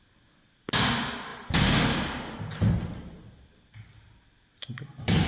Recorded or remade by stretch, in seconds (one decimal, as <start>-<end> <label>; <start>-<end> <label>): 0.0-5.3 recorded